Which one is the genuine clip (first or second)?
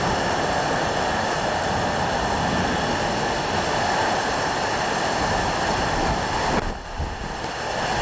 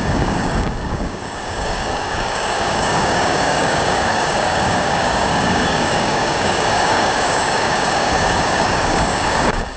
first